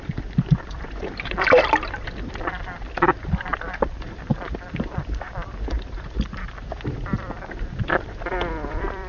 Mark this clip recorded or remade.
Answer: remade